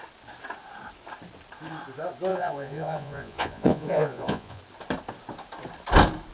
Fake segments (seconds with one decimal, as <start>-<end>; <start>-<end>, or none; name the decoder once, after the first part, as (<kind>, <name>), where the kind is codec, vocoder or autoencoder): 2.3-4.6 (vocoder, Vocos)